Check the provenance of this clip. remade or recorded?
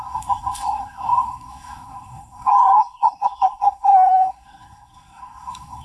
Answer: remade